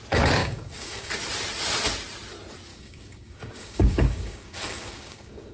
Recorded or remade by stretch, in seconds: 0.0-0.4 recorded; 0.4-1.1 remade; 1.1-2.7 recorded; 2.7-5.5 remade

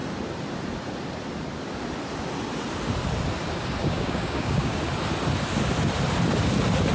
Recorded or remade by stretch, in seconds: 0.0-3.8 recorded; 3.8-4.8 remade; 4.8-6.9 recorded

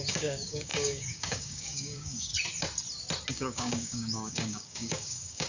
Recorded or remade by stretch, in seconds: 0.0-2.3 remade; 2.3-3.3 recorded; 3.3-5.5 remade

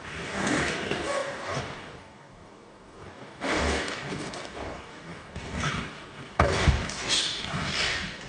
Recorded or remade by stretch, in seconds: 0.0-8.3 remade

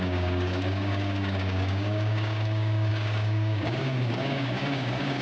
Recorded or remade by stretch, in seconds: 0.0-5.2 remade

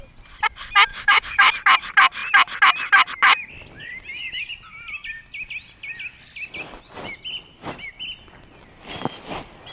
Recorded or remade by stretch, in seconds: 0.0-0.9 recorded; 0.9-1.5 remade; 1.5-9.7 recorded

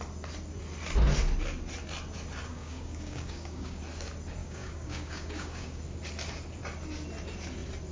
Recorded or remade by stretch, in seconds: 0.0-2.5 recorded; 2.5-3.8 remade; 3.8-4.4 recorded; 4.4-5.8 remade; 5.8-7.9 recorded